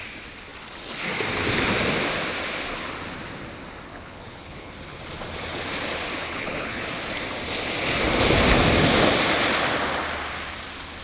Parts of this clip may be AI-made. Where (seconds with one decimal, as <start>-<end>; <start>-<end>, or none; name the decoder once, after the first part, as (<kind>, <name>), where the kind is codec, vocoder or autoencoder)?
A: 3.9-4.7 (codec, HILCodec); 6.2-6.8